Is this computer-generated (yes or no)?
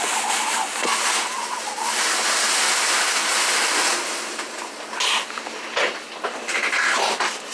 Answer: no